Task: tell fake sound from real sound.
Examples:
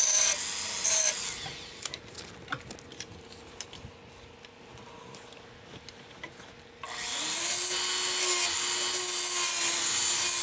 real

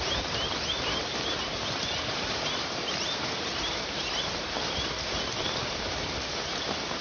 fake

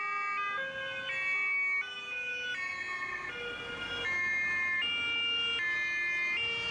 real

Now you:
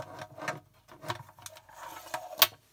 real